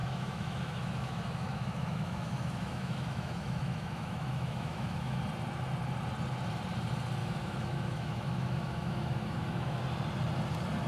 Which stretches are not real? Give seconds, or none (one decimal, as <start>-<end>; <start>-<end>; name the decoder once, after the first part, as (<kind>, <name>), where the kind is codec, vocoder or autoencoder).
0.0-5.2 (autoencoder, DAC-VAE); 7.2-9.8